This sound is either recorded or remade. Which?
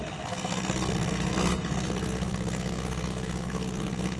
remade